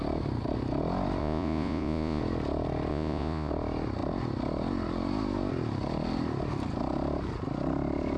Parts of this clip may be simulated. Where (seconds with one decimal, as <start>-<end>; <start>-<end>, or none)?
1.2-2.2; 2.9-3.5